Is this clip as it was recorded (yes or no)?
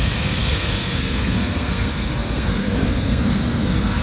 no